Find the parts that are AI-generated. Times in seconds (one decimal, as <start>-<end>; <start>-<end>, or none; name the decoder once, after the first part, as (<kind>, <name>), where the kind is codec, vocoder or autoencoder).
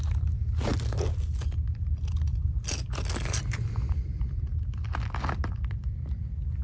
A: none